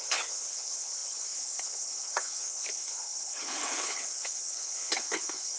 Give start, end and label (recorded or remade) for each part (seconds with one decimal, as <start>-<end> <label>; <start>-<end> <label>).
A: 0.0-5.6 remade